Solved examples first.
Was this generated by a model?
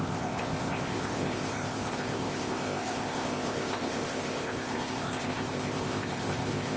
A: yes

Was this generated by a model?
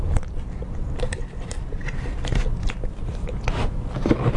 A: yes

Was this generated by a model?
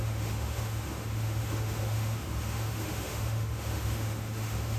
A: yes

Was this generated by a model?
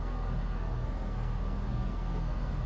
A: yes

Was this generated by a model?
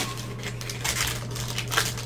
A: no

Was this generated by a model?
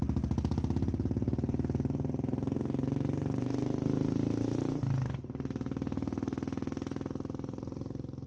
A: no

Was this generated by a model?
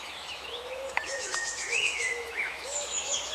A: yes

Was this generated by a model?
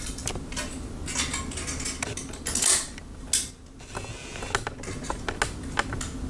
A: no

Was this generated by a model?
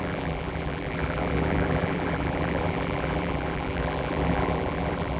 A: yes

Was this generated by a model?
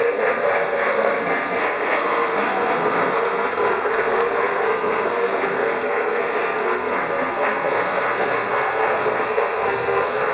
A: yes